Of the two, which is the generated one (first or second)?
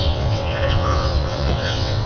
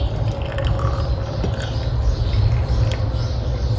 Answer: first